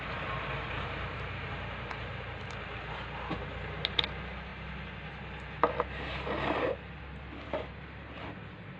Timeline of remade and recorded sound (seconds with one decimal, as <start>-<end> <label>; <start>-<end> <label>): 0.0-8.8 recorded